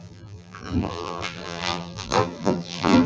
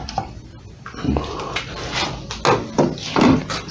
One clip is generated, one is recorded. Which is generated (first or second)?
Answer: first